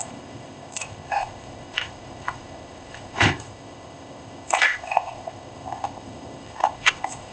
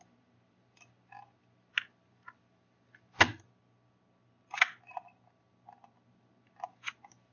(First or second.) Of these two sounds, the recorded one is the second